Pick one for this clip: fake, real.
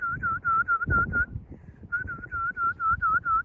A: real